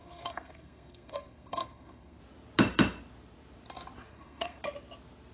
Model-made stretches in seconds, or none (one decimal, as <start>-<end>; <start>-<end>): 0.0-2.2; 4.1-4.6